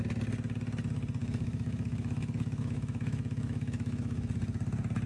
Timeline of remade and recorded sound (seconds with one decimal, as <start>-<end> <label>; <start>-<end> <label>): 0.0-1.2 recorded; 1.2-4.3 remade; 4.3-5.1 recorded